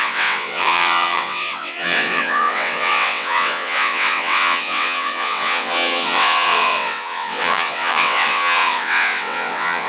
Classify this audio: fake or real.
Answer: fake